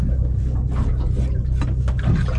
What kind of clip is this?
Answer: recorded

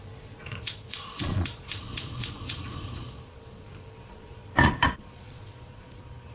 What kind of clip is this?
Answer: remade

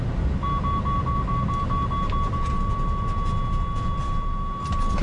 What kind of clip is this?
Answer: recorded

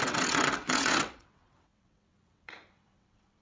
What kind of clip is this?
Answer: remade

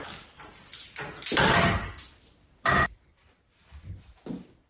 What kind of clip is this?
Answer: recorded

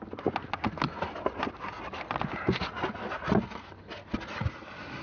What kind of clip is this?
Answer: recorded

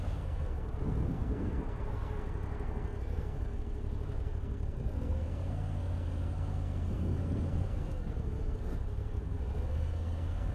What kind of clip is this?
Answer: remade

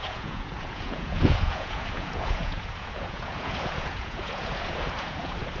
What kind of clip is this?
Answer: remade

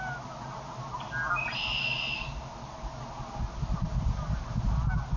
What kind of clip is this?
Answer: recorded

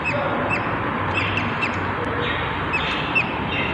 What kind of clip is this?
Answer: remade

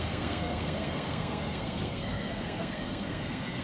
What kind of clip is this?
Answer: remade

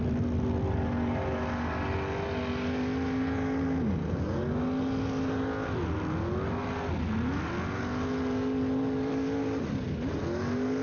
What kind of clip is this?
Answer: recorded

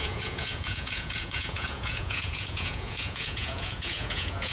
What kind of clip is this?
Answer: remade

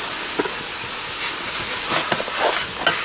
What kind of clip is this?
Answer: recorded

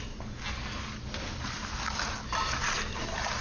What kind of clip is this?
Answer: recorded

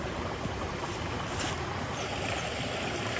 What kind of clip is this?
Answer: recorded